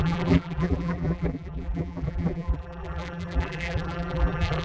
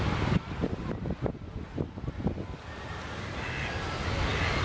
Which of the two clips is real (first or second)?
second